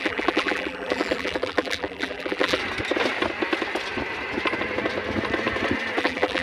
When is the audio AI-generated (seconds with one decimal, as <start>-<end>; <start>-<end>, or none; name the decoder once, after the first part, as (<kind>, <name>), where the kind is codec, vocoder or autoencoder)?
0.0-2.6 (vocoder, BigVGAN v2); 6.0-6.4